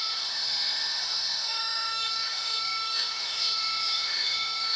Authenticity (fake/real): fake